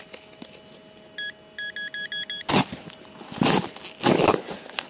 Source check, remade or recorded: recorded